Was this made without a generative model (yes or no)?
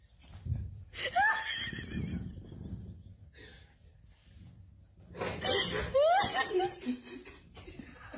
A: yes